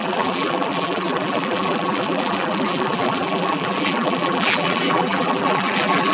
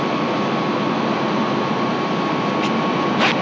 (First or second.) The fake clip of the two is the first